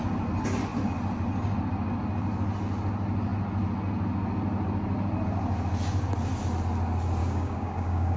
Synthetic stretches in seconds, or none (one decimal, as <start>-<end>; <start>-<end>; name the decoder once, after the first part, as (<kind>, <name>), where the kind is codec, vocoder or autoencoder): 7.2-8.2 (codec, DAC)